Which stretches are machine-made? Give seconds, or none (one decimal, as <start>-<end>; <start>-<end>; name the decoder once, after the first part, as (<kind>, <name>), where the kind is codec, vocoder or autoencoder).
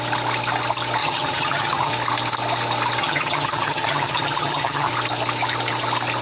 1.0-1.9 (vocoder, HiFi-GAN); 3.0-4.9